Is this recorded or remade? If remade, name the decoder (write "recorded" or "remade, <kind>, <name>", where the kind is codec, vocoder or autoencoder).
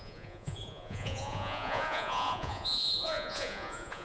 remade, vocoder, Vocos